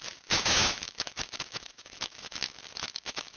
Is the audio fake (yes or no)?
yes